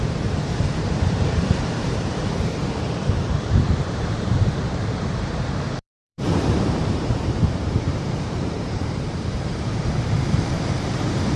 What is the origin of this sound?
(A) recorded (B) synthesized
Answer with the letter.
B